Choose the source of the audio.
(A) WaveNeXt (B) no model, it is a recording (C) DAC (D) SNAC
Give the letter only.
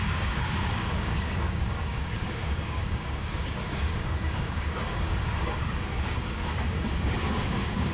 C